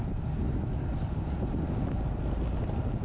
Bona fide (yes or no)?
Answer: yes